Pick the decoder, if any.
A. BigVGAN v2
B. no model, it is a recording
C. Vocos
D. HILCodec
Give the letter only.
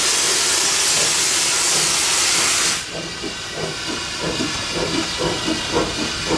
B